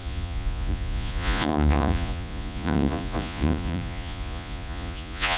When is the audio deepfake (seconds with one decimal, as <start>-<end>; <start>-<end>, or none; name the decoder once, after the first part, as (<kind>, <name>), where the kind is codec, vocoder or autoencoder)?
0.0-5.4 (vocoder, Vocos)